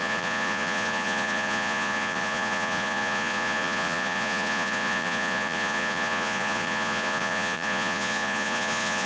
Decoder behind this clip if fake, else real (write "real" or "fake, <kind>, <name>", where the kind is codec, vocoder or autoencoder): fake, vocoder, Vocos